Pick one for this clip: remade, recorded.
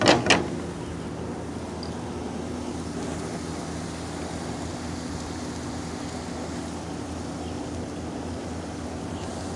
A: recorded